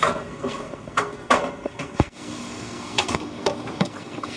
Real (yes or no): no